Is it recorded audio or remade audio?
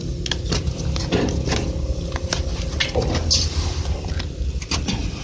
recorded